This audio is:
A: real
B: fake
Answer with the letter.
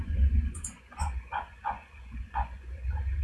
B